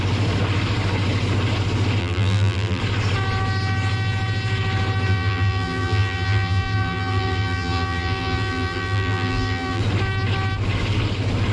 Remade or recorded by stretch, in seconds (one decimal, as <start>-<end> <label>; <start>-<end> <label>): 0.0-2.0 recorded; 2.0-2.8 remade; 2.8-5.1 recorded; 5.1-9.8 remade; 9.8-11.5 recorded